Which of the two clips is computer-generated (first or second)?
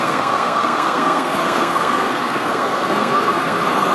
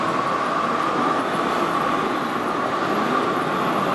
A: first